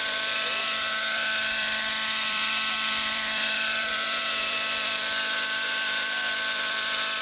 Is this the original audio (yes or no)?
no